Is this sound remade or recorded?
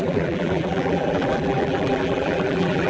remade